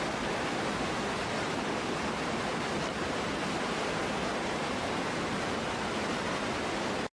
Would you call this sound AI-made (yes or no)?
no